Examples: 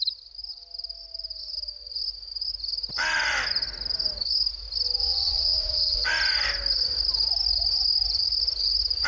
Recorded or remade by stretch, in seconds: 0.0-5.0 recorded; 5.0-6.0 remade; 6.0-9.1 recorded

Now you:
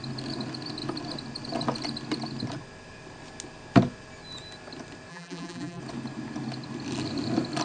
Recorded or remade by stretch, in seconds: 0.0-5.1 recorded; 5.1-5.8 remade; 5.8-7.6 recorded

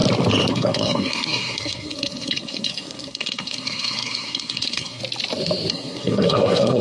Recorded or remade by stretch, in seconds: 0.0-0.5 recorded; 0.5-5.0 remade; 5.0-5.7 recorded; 5.7-6.8 remade

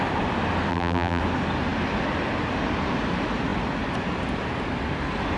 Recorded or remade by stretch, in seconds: 0.0-0.7 recorded; 0.7-1.2 remade; 1.2-5.4 recorded

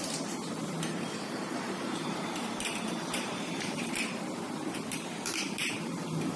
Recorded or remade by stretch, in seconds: 0.0-6.4 remade